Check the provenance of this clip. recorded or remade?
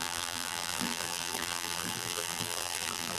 remade